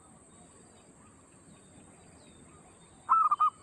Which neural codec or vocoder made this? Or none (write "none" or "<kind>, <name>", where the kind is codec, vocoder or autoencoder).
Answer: none